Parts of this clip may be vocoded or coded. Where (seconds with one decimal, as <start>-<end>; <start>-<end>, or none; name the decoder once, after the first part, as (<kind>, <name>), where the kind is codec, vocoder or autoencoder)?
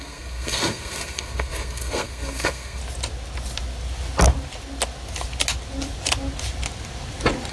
0.0-2.8 (codec, SNAC)